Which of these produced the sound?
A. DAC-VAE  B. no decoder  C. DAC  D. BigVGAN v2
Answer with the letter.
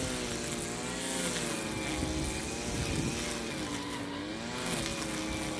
B